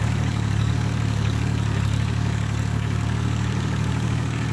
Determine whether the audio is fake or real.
fake